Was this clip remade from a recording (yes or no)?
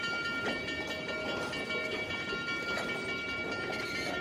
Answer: no